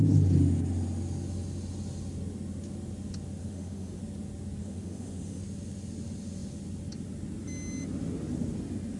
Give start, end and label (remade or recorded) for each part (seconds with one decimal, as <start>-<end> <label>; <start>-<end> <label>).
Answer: 0.0-3.4 recorded; 3.4-4.0 remade; 4.0-4.6 recorded; 4.6-5.4 remade; 5.4-9.0 recorded